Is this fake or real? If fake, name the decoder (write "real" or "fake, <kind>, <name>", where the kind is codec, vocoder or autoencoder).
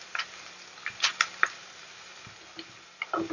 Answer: real